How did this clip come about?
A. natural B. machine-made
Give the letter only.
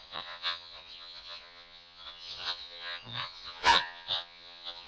B